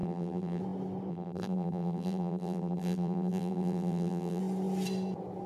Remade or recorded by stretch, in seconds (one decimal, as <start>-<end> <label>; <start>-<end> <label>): 0.0-0.6 remade; 0.6-1.1 recorded; 1.1-4.4 remade; 4.4-5.5 recorded